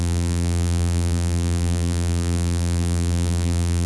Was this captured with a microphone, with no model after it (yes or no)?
no